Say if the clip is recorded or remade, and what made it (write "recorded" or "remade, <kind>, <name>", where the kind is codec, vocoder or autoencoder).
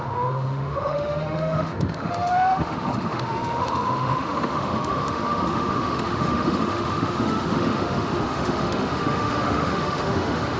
remade, autoencoder, DAC-VAE